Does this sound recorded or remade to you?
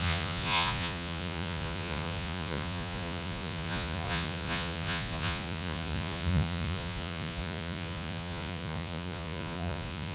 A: remade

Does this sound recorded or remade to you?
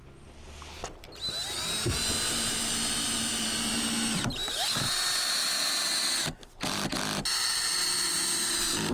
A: recorded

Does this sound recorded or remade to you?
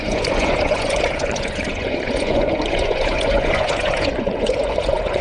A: remade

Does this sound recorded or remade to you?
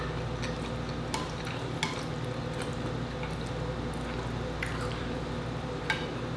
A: recorded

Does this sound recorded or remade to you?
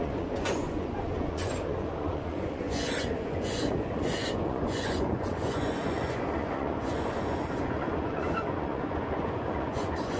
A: remade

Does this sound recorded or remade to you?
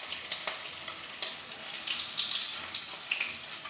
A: recorded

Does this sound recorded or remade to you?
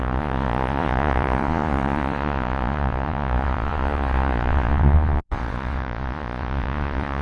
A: remade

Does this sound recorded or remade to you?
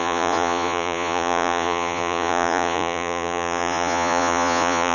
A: remade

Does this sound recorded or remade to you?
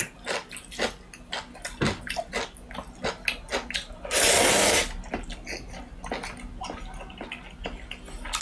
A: recorded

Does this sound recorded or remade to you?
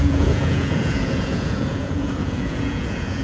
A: remade